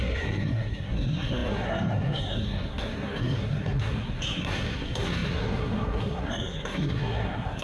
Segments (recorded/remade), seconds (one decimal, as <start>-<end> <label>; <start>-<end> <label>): 0.0-7.6 remade